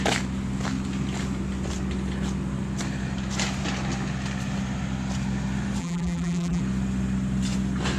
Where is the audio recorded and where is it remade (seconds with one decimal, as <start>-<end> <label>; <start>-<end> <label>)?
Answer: 0.0-5.8 recorded; 5.8-6.6 remade; 6.6-8.0 recorded